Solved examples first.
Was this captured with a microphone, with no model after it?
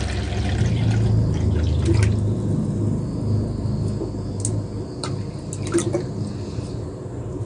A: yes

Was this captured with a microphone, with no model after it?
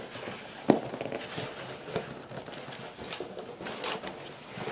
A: yes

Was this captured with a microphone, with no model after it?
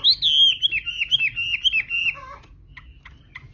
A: yes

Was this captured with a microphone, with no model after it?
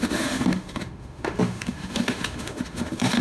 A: no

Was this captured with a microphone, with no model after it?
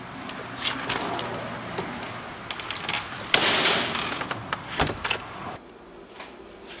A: yes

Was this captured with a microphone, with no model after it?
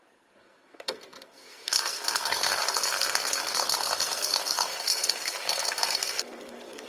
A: no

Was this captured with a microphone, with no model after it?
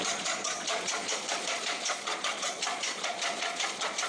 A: no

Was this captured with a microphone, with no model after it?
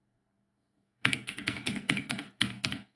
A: no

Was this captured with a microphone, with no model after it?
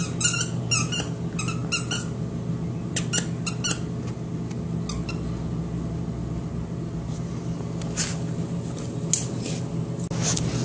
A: yes